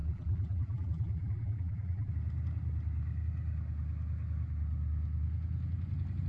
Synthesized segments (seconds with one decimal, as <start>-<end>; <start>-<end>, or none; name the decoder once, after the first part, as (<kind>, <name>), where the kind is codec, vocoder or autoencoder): 0.0-2.1 (vocoder, BigVGAN v2)